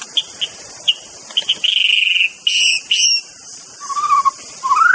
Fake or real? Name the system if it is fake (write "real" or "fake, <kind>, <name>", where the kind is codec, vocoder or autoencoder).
real